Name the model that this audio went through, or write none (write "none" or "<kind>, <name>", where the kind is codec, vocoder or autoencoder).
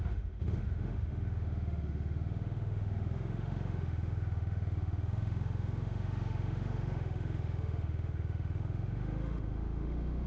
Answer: autoencoder, DAC-VAE